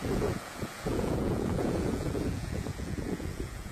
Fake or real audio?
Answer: fake